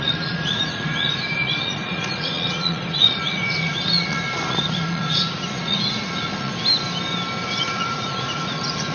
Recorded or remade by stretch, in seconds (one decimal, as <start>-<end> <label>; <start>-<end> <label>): 0.0-6.5 remade; 6.5-7.4 recorded; 7.4-8.9 remade